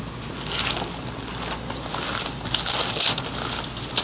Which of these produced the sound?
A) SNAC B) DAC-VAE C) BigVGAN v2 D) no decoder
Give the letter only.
D